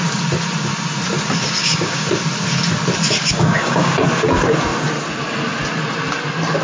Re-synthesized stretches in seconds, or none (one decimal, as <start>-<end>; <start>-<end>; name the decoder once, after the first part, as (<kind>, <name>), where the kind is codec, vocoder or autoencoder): 1.6-2.1 (codec, DAC); 3.3-3.9